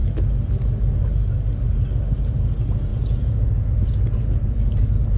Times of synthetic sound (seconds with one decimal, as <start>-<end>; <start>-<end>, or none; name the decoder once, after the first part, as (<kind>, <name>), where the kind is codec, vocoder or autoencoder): 2.9-3.5 (vocoder, Vocos)